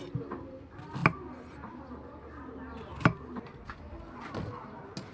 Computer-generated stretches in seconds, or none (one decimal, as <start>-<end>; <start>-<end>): none